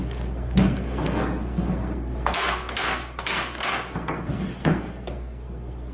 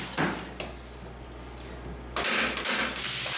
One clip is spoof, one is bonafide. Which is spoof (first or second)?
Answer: first